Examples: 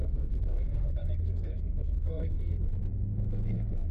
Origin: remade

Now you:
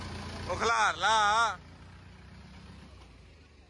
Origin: recorded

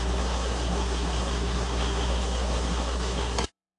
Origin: remade